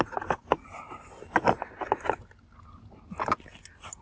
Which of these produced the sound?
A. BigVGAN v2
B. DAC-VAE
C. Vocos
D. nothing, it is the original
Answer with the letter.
D